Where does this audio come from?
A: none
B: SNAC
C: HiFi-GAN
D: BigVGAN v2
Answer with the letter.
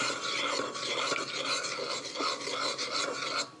A